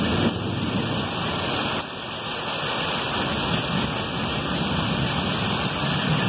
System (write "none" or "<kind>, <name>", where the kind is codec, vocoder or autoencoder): none